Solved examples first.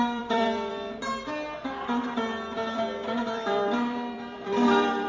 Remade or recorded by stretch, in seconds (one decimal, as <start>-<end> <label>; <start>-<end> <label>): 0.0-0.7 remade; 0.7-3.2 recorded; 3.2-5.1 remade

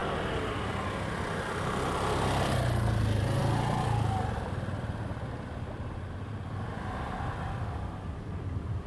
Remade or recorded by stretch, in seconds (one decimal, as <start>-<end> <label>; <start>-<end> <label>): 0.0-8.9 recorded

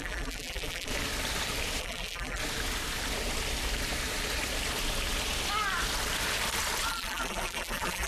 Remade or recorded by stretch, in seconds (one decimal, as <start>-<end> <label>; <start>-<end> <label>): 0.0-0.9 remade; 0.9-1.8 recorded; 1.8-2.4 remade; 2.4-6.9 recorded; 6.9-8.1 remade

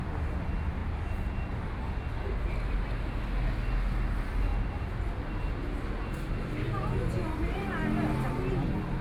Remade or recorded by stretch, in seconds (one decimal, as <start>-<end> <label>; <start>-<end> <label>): 0.0-9.0 recorded